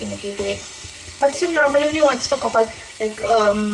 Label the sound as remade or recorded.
remade